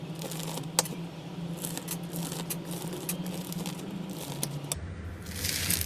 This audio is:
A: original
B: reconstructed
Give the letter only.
A